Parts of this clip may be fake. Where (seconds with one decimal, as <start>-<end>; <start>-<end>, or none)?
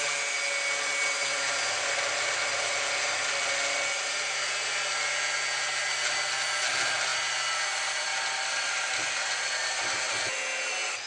7.1-10.1